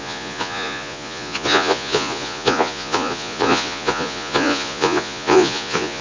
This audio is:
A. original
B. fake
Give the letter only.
B